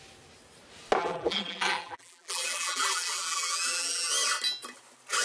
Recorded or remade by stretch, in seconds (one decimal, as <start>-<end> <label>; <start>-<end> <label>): 0.0-1.0 recorded; 1.0-4.1 remade; 4.1-5.2 recorded